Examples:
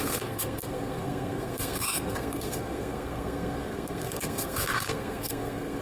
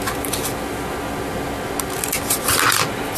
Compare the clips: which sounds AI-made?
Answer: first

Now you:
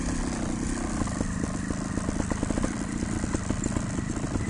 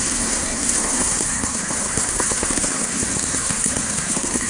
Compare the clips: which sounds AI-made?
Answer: second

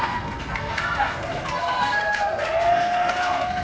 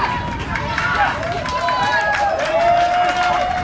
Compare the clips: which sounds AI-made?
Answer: first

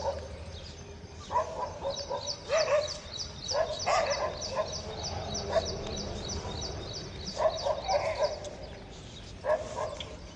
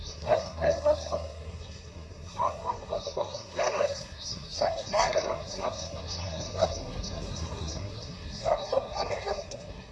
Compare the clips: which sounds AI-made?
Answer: second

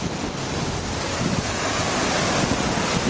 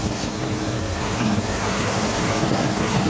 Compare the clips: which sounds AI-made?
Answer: second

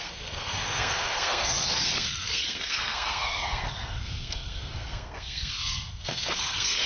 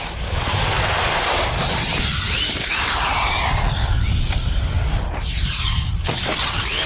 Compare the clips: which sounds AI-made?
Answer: first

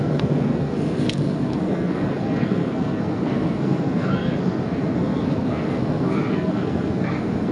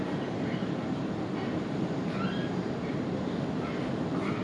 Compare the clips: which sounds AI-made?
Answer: first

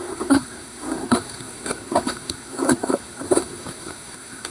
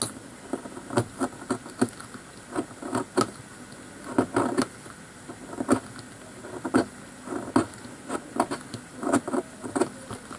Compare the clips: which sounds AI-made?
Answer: first